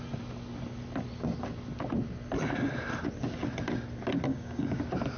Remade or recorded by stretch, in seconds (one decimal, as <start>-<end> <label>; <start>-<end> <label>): 0.0-4.3 recorded; 4.3-4.8 remade; 4.8-5.2 recorded